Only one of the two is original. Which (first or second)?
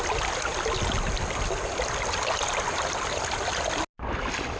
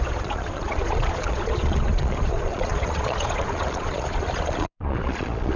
first